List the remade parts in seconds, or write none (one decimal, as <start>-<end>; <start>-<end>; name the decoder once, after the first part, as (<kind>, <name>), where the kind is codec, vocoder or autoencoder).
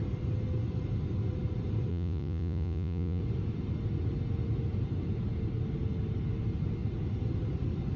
1.9-3.2 (vocoder, Vocos)